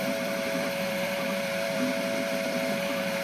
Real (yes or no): no